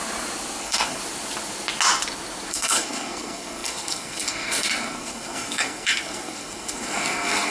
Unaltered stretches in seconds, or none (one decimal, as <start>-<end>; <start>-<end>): 0.0-0.6; 1.0-2.5